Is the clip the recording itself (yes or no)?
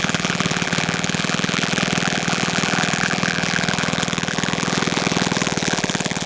no